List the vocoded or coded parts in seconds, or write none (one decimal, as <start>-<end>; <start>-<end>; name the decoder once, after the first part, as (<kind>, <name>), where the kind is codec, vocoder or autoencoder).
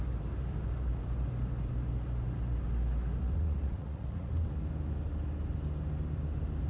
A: 3.2-4.3 (vocoder, Vocos)